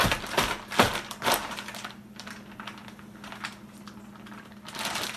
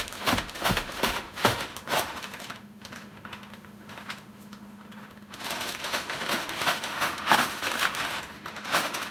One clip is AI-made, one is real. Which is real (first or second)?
first